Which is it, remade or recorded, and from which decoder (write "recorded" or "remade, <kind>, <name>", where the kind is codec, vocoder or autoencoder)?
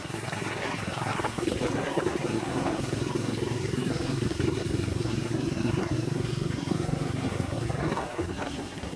remade, codec, SNAC